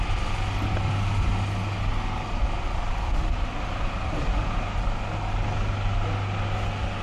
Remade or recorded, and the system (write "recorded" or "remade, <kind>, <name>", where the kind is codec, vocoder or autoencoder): recorded